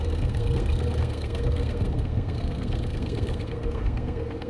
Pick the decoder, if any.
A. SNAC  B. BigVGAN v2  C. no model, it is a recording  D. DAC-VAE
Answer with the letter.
A